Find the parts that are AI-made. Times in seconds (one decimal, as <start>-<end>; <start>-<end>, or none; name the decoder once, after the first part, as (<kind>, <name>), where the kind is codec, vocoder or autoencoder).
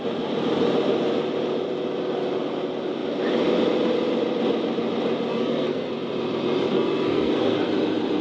5.3-5.9 (codec, SNAC); 6.7-7.7